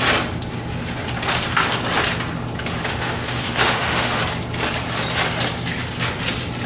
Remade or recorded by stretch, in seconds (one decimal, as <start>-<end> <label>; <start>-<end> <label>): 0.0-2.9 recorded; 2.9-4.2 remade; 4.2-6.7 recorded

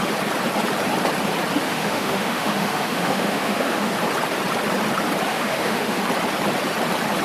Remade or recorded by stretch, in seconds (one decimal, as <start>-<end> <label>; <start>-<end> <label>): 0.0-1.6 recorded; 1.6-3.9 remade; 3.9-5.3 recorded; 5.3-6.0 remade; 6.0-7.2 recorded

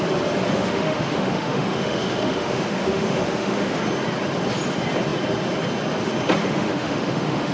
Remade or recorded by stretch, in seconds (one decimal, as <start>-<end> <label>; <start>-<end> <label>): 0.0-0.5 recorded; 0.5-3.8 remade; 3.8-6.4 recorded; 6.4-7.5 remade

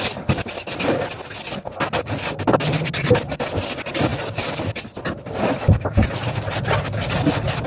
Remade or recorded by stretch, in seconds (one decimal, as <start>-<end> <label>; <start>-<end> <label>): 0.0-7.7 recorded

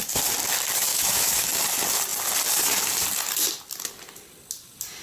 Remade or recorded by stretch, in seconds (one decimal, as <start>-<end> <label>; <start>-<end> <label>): 0.0-0.9 recorded; 0.9-1.5 remade; 1.5-5.0 recorded

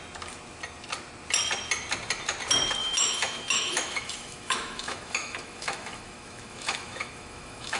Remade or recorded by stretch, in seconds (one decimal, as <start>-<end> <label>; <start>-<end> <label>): 0.0-2.8 recorded; 2.8-7.8 remade

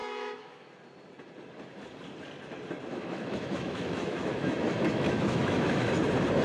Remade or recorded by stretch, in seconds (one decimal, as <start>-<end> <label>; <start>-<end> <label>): 0.0-0.7 remade; 0.7-2.9 recorded; 2.9-5.9 remade; 5.9-6.4 recorded

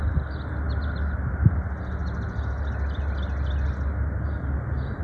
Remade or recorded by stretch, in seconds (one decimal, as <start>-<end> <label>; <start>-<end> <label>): 0.0-5.0 recorded